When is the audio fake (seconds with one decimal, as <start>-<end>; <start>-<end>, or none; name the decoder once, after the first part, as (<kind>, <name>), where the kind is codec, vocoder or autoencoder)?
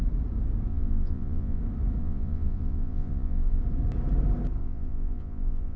0.7-1.6 (vocoder, Vocos); 2.0-3.6; 4.6-5.8